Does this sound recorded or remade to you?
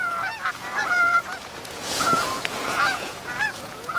remade